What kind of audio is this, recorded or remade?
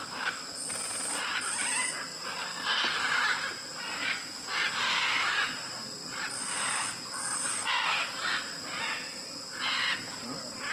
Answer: recorded